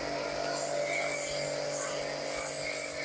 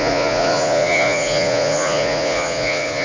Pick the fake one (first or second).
second